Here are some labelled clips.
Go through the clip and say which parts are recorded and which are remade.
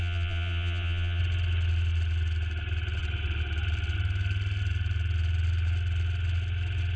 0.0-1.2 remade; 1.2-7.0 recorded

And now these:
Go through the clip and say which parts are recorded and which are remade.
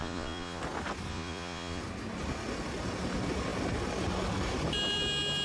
0.0-0.6 remade; 0.6-1.1 recorded; 1.1-1.8 remade; 1.8-5.4 recorded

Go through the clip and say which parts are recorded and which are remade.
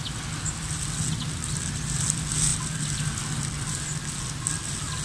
0.0-5.0 recorded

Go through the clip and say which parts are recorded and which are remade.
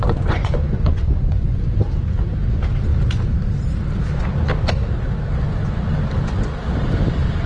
0.0-1.8 remade; 1.8-7.5 recorded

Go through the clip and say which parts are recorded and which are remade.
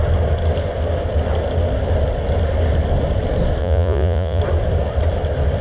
0.0-3.6 recorded; 3.6-4.4 remade; 4.4-5.6 recorded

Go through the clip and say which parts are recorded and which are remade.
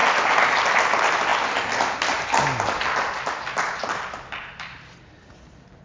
0.0-5.8 recorded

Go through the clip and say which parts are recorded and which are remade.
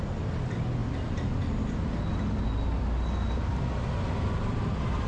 0.0-5.1 recorded